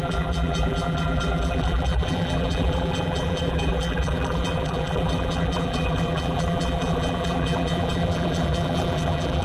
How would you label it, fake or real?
fake